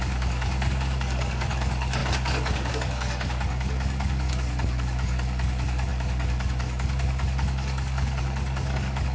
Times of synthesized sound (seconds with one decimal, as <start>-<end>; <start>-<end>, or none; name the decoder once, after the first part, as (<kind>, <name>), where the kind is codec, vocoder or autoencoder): 0.0-9.1 (codec, DAC)